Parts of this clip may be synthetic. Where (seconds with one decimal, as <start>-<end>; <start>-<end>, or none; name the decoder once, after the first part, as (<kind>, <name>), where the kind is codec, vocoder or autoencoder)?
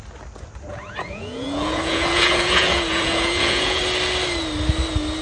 0.7-3.8 (vocoder, Vocos)